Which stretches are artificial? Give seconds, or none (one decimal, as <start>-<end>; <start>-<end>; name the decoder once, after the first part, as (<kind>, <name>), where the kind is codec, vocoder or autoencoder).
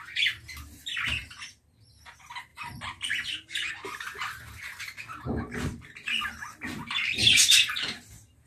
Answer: 1.2-1.8 (vocoder, BigVGAN v2); 2.5-3.7; 7.2-8.5